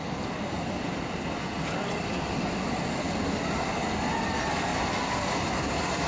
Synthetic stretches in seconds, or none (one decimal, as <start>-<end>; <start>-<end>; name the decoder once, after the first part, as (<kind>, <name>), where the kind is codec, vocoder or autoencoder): none

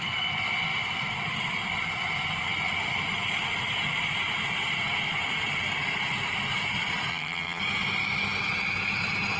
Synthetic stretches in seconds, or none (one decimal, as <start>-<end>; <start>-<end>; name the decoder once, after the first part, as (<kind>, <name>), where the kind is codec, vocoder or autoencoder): 7.1-7.6 (vocoder, HiFi-GAN)

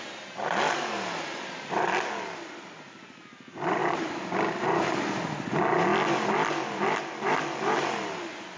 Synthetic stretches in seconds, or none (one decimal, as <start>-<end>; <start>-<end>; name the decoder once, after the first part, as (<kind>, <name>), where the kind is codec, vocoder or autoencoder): none

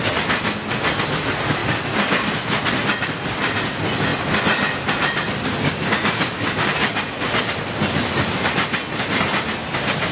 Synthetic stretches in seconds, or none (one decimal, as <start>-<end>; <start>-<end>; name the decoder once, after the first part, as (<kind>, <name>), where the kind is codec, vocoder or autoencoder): none

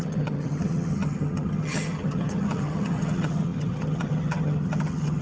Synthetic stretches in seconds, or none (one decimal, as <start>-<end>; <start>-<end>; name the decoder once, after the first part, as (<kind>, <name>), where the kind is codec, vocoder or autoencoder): 0.0-5.2 (vocoder, HiFi-GAN)